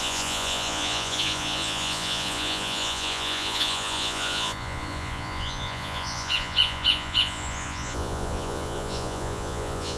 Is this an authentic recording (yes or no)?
no